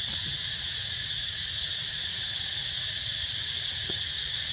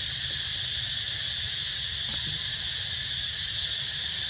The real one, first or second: second